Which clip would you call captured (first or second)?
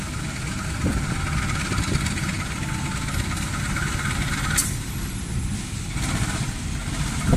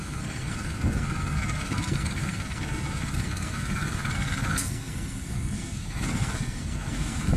first